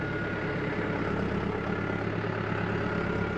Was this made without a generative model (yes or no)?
yes